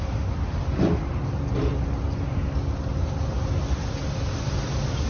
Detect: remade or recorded recorded